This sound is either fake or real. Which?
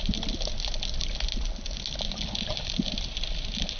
real